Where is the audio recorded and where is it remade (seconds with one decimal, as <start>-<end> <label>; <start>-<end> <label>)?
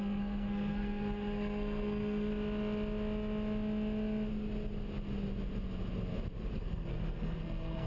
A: 0.0-2.3 remade; 2.3-6.5 recorded; 6.5-7.9 remade